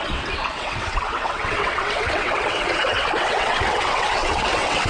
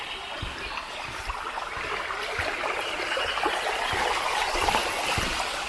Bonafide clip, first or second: second